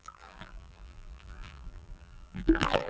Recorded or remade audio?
remade